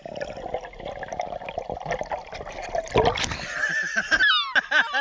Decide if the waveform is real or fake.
real